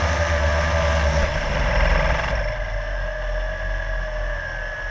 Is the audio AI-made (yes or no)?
no